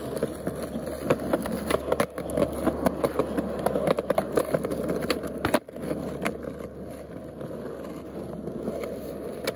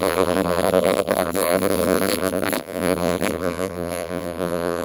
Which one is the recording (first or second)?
first